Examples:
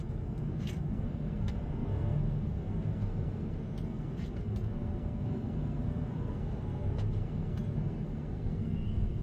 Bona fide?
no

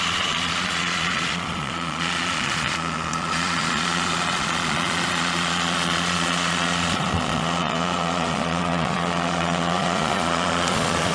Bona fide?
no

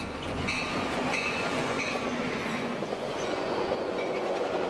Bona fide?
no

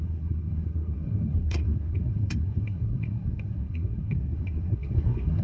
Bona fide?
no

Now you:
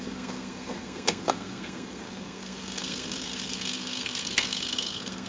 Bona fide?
no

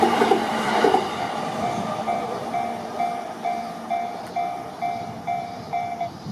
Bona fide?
no